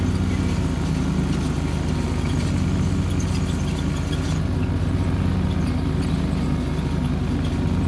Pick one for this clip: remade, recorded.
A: recorded